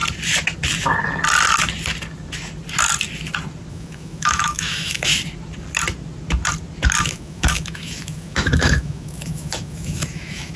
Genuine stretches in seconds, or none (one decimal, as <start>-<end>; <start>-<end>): 0.0-3.7; 5.1-7.0